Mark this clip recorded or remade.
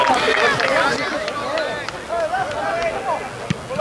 recorded